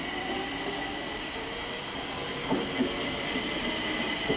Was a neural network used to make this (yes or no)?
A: no